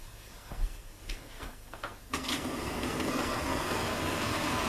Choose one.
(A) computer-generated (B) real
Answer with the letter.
A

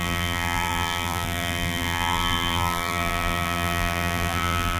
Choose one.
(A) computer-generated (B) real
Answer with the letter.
A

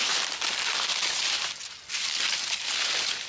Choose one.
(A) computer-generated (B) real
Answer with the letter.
B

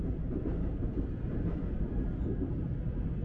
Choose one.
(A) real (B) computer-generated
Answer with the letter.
A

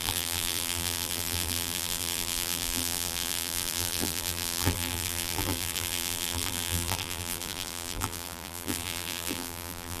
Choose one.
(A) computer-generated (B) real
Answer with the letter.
A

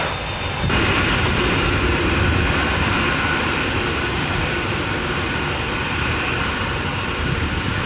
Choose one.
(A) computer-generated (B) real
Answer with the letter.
B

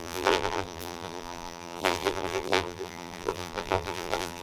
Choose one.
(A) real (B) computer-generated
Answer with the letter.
B